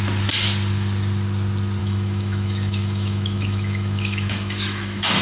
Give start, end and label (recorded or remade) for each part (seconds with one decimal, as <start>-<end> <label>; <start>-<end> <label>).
0.0-1.8 recorded; 1.8-5.2 remade